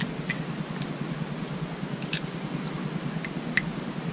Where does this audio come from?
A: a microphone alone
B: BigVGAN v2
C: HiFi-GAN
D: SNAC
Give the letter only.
A